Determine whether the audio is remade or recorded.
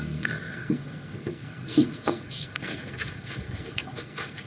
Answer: remade